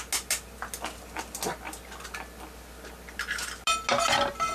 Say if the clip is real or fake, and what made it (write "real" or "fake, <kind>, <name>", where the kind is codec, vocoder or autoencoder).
real